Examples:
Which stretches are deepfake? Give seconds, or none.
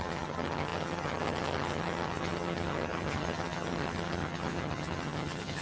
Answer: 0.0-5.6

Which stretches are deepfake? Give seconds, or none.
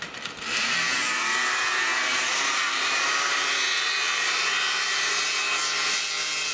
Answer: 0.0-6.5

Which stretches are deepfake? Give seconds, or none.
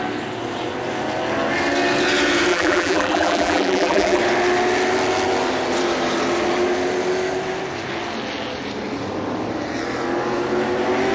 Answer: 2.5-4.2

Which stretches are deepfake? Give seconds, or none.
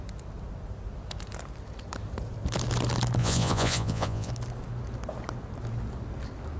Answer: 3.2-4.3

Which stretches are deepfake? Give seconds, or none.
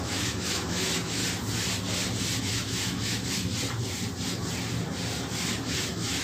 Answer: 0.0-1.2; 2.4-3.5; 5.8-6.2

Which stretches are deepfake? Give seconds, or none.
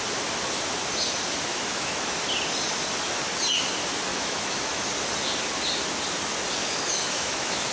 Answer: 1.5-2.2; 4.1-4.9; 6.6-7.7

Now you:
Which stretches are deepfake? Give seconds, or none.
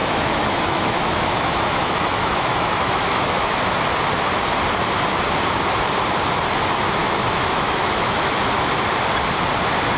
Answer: 0.0-3.6; 7.0-8.4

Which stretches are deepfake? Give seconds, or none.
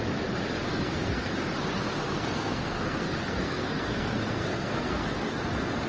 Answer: 0.7-1.3; 1.9-5.4